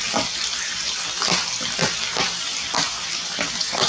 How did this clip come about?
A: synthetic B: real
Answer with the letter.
B